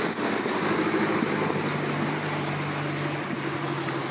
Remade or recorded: recorded